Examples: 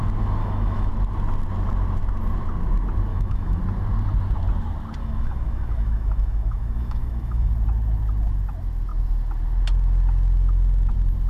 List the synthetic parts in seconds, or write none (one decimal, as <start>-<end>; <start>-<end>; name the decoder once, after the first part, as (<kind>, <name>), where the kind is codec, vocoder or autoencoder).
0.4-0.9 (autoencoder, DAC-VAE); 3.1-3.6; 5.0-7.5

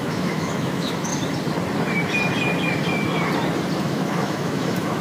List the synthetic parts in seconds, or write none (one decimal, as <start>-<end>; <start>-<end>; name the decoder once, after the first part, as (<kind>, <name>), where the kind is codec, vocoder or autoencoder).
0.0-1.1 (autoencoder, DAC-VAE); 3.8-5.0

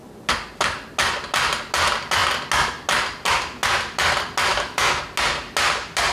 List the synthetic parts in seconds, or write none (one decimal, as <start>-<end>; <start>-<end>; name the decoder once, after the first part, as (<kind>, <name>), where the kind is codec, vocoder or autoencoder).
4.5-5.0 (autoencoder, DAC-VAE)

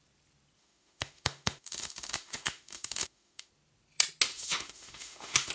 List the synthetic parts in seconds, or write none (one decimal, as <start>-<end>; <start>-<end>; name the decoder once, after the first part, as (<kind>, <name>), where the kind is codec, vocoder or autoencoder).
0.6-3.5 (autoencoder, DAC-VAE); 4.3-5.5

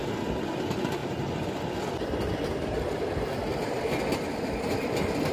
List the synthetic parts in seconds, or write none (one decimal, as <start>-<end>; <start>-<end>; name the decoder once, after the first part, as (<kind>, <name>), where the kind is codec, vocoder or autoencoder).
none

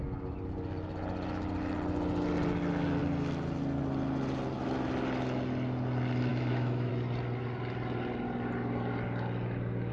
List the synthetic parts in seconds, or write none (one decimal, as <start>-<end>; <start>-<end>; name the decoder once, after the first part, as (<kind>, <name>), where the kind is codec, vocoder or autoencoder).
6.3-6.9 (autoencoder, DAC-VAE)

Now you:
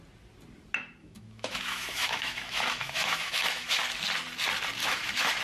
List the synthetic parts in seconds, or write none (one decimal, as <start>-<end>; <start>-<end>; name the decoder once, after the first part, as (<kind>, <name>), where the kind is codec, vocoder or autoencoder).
1.0-3.8 (autoencoder, DAC-VAE); 4.8-5.4